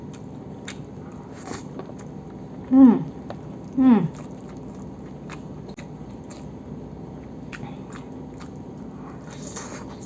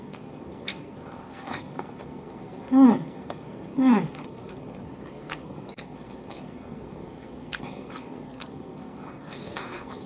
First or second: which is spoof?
second